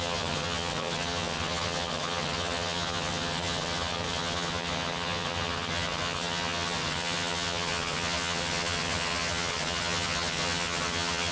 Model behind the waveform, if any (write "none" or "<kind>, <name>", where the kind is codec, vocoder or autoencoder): vocoder, HiFi-GAN